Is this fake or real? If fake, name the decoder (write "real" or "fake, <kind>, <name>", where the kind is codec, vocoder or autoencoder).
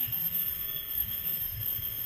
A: fake, autoencoder, DAC-VAE